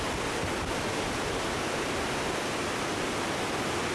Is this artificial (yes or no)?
no